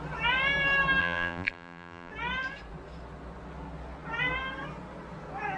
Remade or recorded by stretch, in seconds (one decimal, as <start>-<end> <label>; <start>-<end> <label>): 0.0-1.0 recorded; 1.0-2.1 remade; 2.1-5.6 recorded